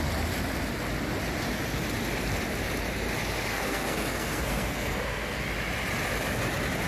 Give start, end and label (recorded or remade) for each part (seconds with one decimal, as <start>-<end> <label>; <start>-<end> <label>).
0.0-3.5 recorded; 3.5-5.4 remade; 5.4-6.9 recorded